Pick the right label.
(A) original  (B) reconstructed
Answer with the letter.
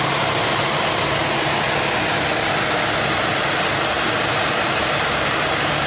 A